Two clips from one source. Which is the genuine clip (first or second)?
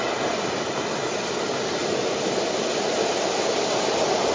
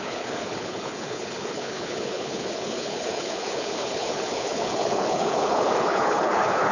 first